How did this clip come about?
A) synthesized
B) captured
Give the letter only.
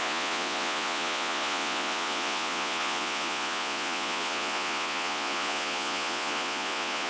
A